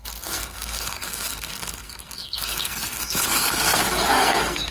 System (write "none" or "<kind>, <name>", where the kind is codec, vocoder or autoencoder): codec, SNAC